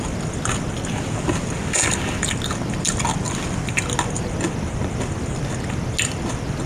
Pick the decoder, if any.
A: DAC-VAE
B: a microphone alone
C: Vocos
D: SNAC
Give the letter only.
B